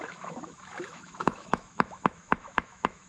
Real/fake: fake